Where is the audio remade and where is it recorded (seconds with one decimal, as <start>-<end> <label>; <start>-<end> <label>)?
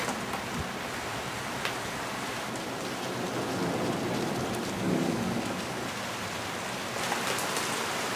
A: 0.0-4.8 recorded; 4.8-5.8 remade; 5.8-8.2 recorded